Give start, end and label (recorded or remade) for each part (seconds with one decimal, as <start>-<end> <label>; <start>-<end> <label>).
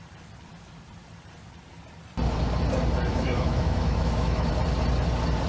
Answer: 0.0-3.1 recorded; 3.1-4.5 remade; 4.5-5.5 recorded